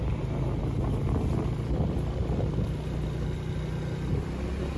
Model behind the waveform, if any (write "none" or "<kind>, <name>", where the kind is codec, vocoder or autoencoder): none